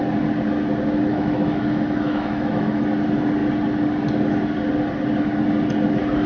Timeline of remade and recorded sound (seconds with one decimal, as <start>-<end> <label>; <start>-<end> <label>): 0.0-1.1 recorded; 1.1-2.8 remade; 2.8-6.3 recorded